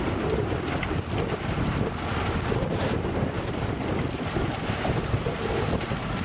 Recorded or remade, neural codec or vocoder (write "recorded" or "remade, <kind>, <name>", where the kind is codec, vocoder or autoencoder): recorded